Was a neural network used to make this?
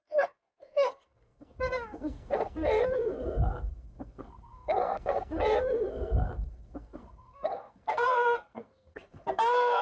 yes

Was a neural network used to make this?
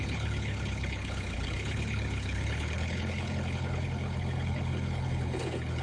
yes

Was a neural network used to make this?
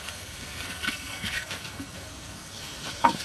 yes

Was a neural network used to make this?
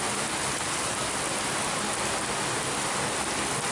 no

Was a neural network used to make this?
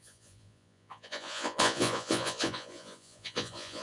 yes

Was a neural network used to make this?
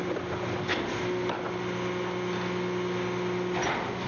no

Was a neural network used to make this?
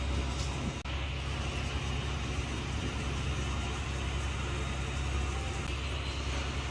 no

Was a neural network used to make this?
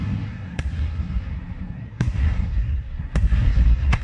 yes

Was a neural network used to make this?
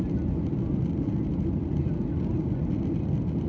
no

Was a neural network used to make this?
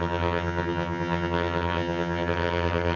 yes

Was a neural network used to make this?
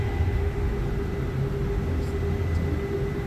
no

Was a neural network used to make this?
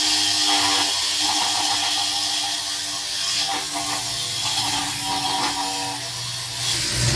no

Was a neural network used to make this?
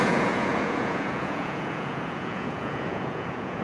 yes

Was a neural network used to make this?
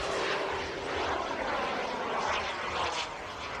no